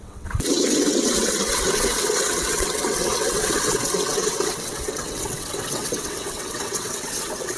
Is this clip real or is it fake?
fake